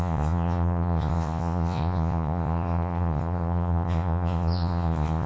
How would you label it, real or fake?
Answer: fake